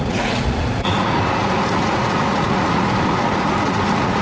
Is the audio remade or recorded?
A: remade